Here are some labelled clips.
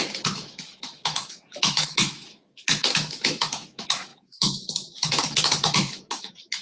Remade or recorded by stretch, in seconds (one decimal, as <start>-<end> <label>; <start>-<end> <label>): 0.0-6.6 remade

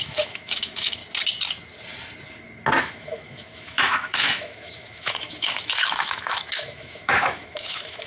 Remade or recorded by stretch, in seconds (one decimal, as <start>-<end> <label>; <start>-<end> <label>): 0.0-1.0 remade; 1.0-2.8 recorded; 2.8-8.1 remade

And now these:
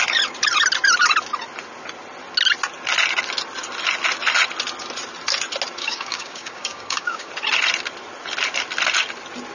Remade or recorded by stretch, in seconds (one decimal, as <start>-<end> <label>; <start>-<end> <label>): 0.0-5.8 recorded; 5.8-7.3 remade; 7.3-9.5 recorded

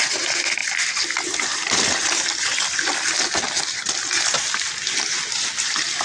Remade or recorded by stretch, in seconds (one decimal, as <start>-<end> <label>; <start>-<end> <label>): 0.0-6.0 recorded

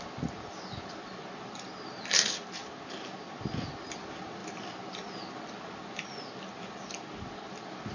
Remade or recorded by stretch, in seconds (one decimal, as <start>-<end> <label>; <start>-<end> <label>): 0.0-7.9 recorded

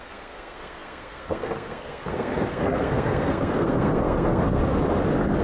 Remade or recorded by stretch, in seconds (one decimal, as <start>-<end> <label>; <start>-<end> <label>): 0.0-4.6 remade; 4.6-5.4 recorded

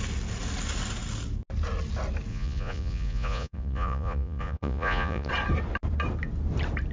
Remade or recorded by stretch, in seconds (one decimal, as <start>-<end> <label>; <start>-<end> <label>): 0.0-2.3 recorded; 2.3-5.3 remade; 5.3-6.9 recorded

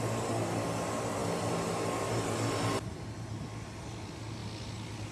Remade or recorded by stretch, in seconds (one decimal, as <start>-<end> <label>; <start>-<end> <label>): 0.0-5.1 recorded